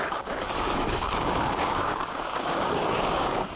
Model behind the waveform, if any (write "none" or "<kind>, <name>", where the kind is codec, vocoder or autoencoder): codec, DAC